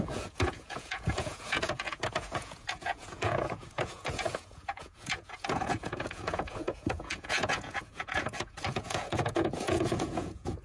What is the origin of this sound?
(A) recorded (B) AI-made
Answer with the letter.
B